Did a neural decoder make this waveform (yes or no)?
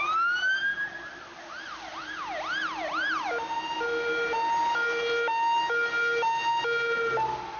no